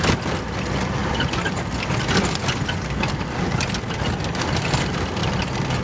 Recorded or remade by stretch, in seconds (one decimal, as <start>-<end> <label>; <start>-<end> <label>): 0.0-5.8 recorded